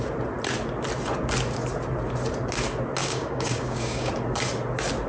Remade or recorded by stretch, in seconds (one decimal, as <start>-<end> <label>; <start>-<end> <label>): 0.0-3.0 recorded; 3.0-4.1 remade; 4.1-5.1 recorded